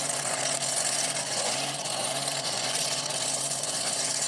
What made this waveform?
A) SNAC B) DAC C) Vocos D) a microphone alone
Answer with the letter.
C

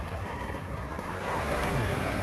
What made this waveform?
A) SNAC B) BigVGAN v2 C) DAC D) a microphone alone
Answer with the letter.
A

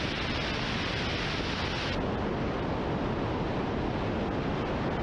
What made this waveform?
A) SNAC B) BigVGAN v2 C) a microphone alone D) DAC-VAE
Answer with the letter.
C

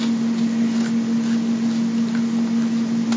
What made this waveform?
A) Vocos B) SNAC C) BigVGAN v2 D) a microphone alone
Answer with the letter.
D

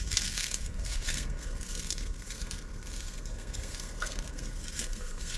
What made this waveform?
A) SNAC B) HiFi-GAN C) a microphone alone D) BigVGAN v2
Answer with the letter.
A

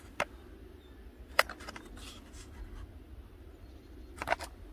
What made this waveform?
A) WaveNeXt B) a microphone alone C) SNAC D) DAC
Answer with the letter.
B